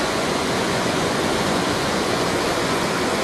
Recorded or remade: remade